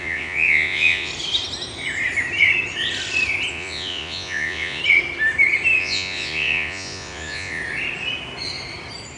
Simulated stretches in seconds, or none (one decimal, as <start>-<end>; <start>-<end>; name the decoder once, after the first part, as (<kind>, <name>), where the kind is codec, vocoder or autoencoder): 0.0-1.1 (vocoder, Vocos); 3.5-4.8; 5.8-7.6